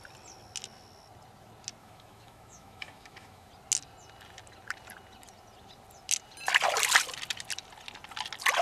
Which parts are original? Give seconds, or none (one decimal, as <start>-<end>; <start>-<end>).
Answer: 0.0-1.8; 3.5-8.6